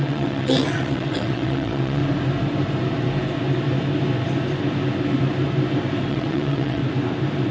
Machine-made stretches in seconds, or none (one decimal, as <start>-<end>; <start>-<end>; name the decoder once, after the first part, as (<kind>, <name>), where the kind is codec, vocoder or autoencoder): 0.0-2.0 (vocoder, WaveNeXt); 6.1-6.8